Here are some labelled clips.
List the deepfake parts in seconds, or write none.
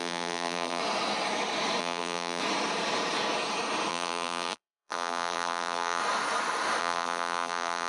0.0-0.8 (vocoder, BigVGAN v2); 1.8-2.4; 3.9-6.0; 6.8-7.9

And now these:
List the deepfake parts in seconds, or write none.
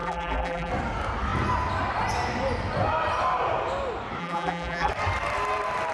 0.0-0.7 (vocoder, BigVGAN v2); 4.2-4.9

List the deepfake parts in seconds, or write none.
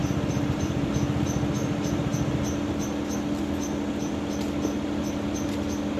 0.0-0.9 (vocoder, BigVGAN v2)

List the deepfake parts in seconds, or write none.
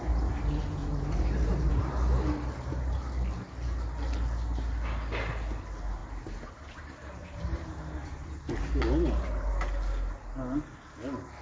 0.8-1.7 (vocoder, BigVGAN v2); 6.0-8.5